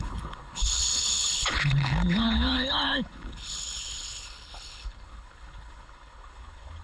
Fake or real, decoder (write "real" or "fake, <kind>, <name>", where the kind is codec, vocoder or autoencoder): fake, codec, HILCodec